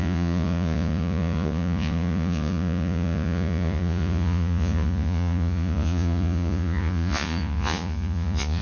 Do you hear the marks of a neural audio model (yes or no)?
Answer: yes